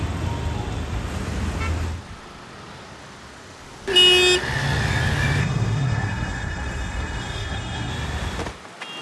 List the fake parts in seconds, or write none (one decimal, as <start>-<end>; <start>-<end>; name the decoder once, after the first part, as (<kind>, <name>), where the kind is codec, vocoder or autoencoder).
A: 5.4-7.9 (codec, SNAC)